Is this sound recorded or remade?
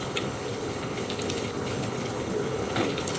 remade